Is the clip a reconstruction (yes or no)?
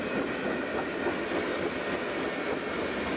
no